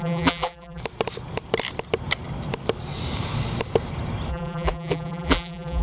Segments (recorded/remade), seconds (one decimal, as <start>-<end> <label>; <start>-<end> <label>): 0.0-0.8 remade; 0.8-4.3 recorded; 4.3-5.8 remade